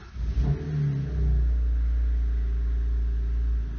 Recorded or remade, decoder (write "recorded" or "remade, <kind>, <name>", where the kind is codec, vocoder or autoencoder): recorded